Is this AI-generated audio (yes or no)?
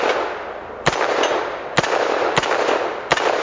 no